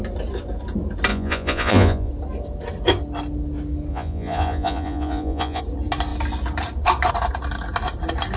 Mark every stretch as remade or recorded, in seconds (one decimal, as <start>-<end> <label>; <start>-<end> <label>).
0.0-1.1 recorded; 1.1-2.1 remade; 2.1-3.9 recorded; 3.9-5.6 remade; 5.6-8.4 recorded